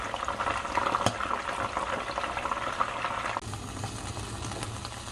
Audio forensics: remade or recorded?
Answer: recorded